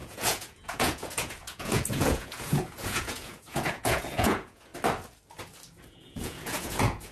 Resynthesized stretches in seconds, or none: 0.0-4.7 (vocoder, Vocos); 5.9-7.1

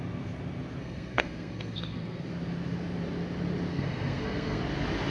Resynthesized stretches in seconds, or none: 0.8-2.3 (codec, SNAC); 3.7-4.6

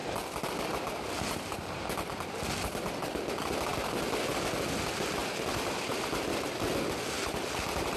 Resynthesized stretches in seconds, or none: 5.2-6.1 (vocoder, BigVGAN v2)

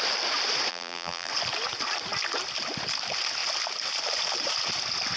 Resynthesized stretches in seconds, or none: 0.7-1.3 (vocoder, BigVGAN v2)